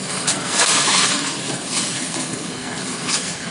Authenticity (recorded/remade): remade